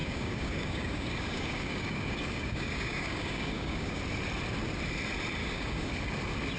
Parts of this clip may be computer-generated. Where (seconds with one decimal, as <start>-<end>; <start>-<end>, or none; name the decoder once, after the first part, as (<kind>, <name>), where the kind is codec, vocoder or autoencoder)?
0.0-4.0 (codec, DAC); 5.4-5.9